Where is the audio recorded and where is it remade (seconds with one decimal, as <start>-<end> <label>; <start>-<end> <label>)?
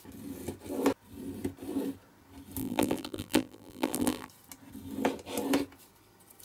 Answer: 0.0-2.6 recorded; 2.6-4.3 remade; 4.3-6.4 recorded